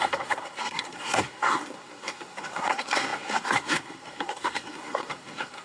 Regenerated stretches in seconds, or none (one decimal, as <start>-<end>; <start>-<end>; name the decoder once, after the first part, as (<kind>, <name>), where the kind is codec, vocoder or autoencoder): 0.0-5.6 (codec, SNAC)